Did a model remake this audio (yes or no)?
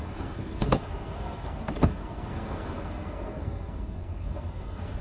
yes